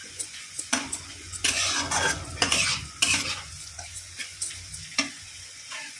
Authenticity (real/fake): fake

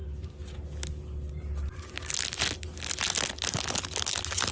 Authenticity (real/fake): real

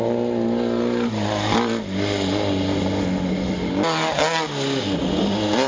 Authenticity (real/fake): real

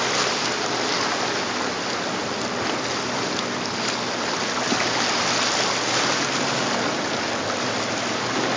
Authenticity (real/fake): real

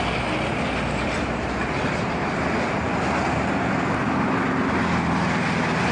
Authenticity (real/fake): real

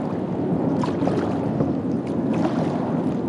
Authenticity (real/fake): real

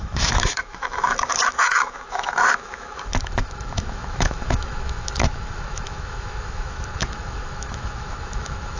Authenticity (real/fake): fake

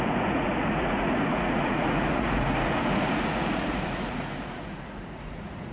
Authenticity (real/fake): fake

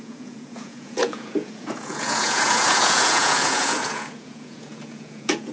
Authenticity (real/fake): fake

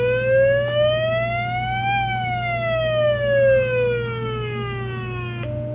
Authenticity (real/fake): real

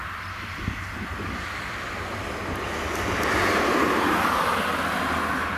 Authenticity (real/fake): real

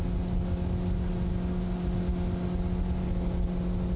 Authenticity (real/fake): real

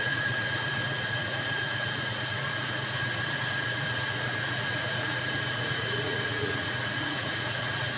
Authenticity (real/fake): fake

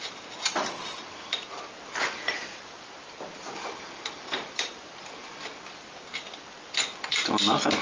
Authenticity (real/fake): real